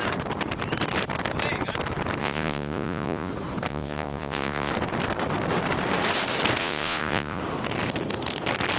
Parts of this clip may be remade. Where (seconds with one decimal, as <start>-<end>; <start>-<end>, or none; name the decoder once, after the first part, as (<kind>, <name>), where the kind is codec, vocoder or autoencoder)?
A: 2.2-3.3 (vocoder, Vocos); 3.7-4.7; 6.6-7.4